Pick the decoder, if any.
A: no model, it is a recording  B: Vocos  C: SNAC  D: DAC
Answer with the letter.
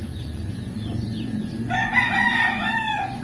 B